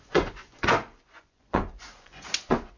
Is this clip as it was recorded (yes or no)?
no